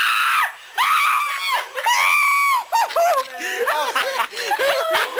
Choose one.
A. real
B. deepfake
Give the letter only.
A